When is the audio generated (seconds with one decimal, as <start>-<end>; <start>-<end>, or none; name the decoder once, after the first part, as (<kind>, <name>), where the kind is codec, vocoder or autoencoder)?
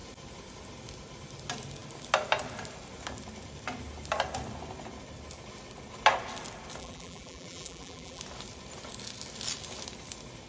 6.8-8.2 (vocoder, BigVGAN v2)